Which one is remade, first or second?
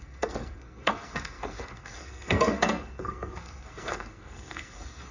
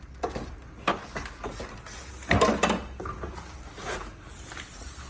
first